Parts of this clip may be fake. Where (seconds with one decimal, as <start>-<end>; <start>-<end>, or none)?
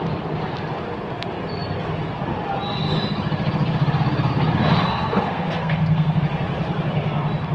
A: 4.9-6.2